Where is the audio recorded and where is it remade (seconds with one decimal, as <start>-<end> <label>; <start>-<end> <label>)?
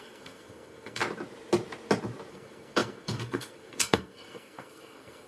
0.0-1.0 remade; 1.0-2.3 recorded; 2.3-5.3 remade